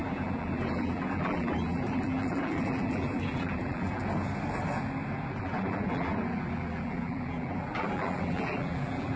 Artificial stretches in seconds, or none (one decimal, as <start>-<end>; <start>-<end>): 0.0-4.0; 5.4-9.2